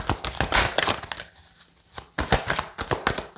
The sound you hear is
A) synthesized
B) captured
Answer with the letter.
B